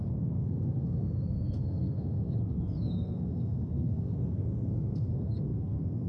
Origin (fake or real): fake